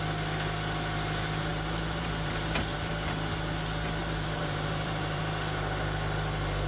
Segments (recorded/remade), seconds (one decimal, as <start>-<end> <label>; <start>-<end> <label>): 0.0-1.5 recorded; 1.5-2.9 remade; 2.9-4.0 recorded; 4.0-5.2 remade; 5.2-6.7 recorded